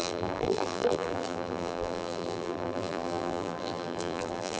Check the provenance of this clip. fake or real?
fake